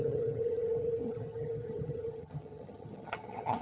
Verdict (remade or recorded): remade